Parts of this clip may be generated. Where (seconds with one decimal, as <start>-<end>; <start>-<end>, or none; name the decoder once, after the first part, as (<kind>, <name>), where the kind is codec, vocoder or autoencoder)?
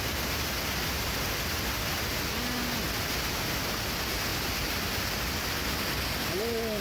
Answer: none